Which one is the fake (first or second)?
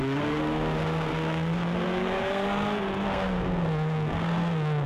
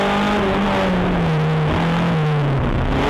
first